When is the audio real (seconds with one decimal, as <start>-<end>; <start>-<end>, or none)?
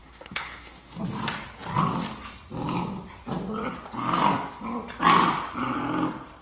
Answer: 1.0-6.4